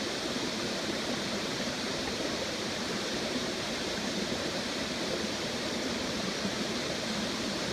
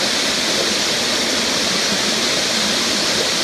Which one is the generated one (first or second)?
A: first